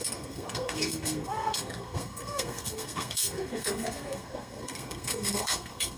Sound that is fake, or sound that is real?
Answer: fake